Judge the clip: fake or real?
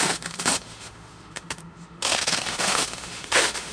fake